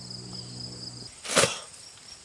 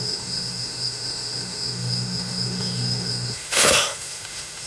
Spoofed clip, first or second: second